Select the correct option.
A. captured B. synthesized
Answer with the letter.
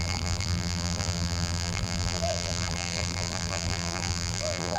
B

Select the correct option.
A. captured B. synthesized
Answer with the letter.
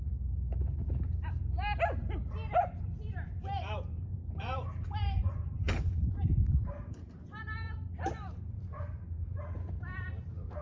B